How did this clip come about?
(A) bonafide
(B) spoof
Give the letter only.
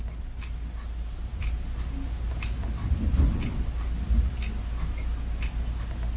A